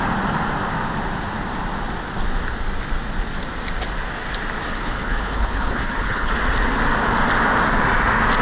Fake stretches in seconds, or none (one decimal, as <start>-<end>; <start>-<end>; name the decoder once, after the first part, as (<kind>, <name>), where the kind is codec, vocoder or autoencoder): 4.7-6.3 (codec, HILCodec)